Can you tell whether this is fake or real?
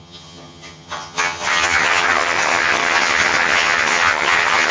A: fake